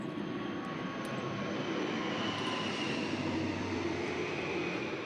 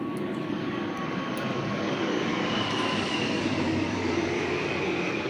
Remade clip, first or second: second